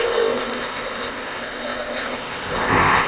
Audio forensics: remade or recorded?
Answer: remade